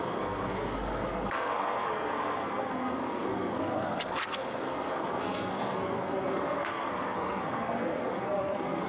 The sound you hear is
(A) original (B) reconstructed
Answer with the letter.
B